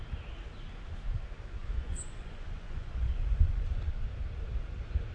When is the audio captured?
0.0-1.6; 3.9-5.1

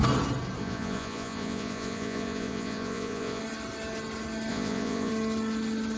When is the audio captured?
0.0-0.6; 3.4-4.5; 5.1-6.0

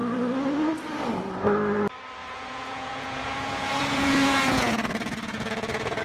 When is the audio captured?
0.0-2.2

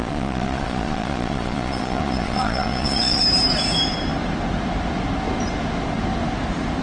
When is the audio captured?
3.2-6.8

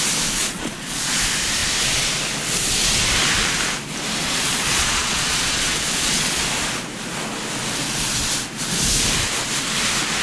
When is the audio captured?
0.0-0.4; 1.2-4.2; 6.4-10.2